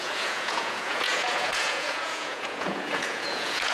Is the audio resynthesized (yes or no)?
yes